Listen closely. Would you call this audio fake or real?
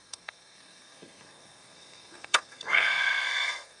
fake